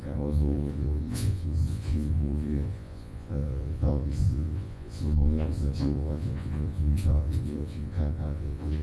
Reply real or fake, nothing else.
fake